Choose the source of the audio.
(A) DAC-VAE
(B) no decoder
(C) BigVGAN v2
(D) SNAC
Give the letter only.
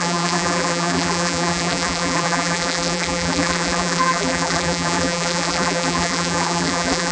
C